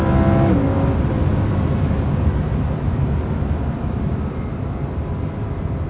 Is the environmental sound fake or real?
real